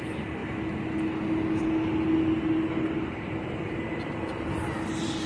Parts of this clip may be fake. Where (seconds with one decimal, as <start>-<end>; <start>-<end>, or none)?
none